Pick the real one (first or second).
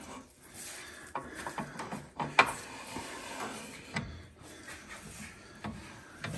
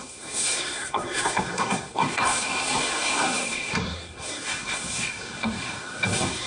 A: first